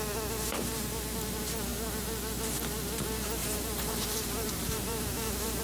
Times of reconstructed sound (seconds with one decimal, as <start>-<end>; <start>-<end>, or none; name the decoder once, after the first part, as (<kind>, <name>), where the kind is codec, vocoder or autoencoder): 3.4-5.6 (vocoder, BigVGAN v2)